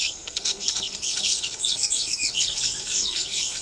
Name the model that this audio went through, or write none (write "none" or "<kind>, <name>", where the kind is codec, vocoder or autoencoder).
codec, SNAC